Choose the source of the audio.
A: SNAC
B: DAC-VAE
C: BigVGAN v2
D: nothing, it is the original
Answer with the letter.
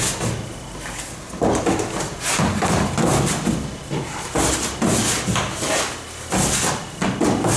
D